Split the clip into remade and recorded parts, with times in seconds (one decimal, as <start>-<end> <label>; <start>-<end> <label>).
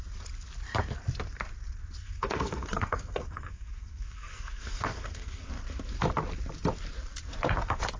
0.0-2.0 recorded; 2.0-5.5 remade; 5.5-8.0 recorded